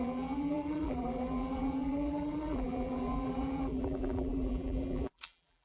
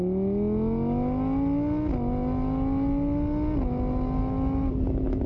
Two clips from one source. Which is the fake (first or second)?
first